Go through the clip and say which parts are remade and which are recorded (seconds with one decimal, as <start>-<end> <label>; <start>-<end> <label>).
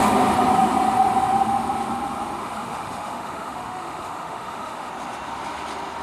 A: 0.0-2.4 recorded; 2.4-4.9 remade; 4.9-6.0 recorded